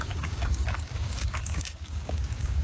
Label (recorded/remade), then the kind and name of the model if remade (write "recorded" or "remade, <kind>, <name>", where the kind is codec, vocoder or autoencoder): remade, codec, DAC